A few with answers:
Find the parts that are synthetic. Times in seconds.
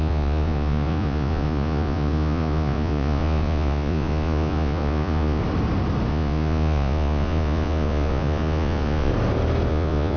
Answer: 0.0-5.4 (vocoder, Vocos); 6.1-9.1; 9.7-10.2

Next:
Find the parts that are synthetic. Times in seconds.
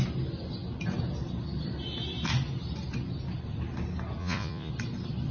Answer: 4.2-4.7 (vocoder, Vocos)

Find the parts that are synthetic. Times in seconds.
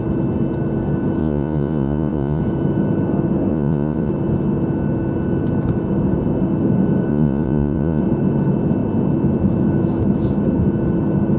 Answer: 1.2-2.4 (vocoder, Vocos); 3.5-4.1; 7.1-8.0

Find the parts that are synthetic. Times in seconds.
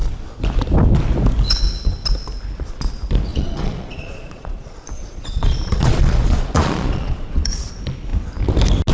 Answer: 3.3-7.7 (vocoder, Vocos)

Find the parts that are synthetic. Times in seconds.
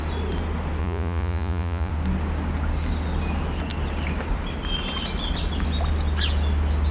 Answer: 0.8-1.9 (vocoder, Vocos)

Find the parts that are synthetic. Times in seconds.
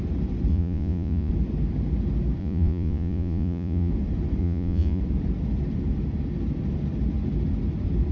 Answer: 0.5-1.3 (vocoder, Vocos); 2.4-3.9; 4.4-5.0